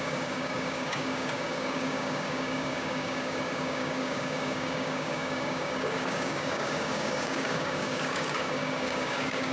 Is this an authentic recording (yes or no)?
no